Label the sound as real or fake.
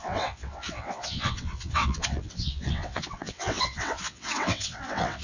fake